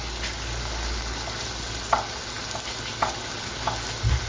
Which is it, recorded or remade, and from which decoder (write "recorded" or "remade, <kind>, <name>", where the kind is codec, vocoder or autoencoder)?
recorded